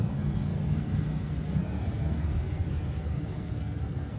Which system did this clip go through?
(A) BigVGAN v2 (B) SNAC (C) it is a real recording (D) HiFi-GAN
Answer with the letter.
B